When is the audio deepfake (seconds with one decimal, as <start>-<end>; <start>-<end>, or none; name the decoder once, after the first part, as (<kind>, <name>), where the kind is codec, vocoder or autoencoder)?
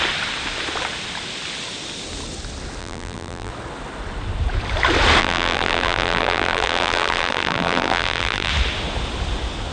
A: 2.8-3.5 (vocoder, BigVGAN v2); 5.2-8.5